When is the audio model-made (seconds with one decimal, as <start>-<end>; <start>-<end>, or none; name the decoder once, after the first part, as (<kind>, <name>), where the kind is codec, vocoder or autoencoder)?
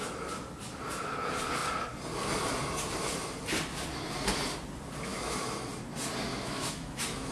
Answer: 5.1-5.6 (autoencoder, DAC-VAE); 6.3-7.3